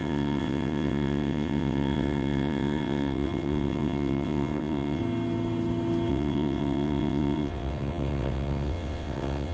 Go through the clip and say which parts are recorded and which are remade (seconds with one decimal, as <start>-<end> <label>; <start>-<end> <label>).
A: 0.0-5.0 remade; 5.0-6.1 recorded; 6.1-9.5 remade